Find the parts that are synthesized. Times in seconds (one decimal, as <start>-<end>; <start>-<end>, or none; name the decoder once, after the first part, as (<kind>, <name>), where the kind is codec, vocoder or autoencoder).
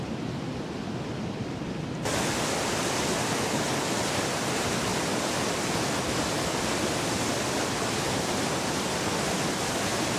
4.9-5.7 (vocoder, BigVGAN v2); 7.3-9.4